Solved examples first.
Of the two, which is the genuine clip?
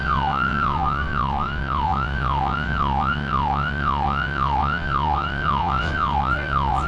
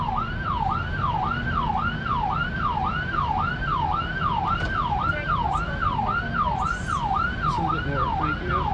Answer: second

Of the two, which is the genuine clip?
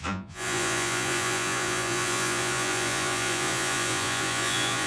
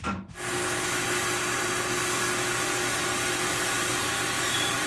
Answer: second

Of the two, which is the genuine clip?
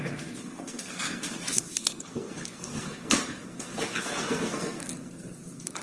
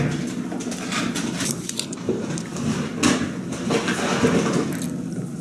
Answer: second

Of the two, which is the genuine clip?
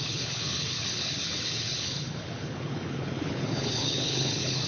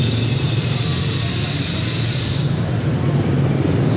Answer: second